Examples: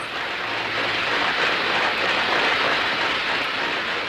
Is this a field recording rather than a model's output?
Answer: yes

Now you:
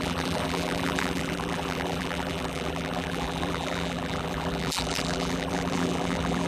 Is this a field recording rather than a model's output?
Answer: no